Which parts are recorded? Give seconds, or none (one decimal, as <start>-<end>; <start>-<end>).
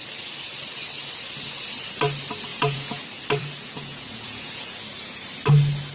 0.0-2.5; 3.0-3.4; 4.8-5.9